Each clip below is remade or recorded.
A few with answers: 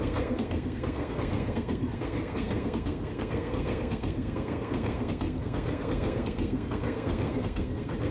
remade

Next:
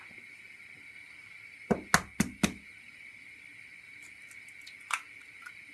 recorded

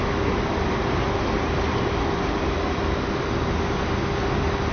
recorded